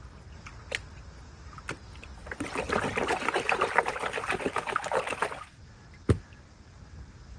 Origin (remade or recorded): recorded